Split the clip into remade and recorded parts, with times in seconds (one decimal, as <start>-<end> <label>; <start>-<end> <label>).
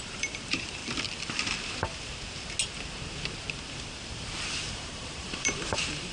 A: 0.0-0.8 remade; 0.8-4.5 recorded; 4.5-6.1 remade